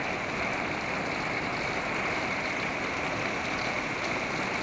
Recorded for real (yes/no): yes